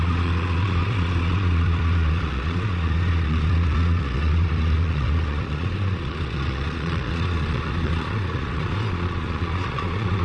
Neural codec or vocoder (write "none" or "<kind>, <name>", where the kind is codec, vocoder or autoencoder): vocoder, Vocos